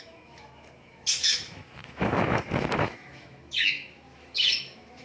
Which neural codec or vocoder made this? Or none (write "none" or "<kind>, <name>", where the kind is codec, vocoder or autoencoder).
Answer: autoencoder, DAC-VAE